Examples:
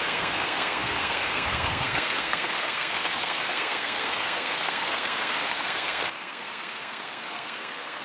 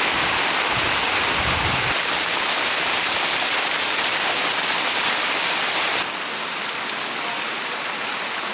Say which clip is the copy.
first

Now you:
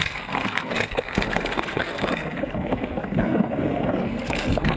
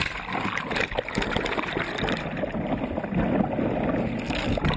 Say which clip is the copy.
first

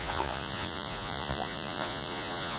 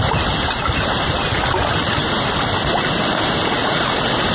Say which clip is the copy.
first